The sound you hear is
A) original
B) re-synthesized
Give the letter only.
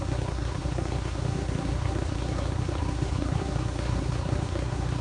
B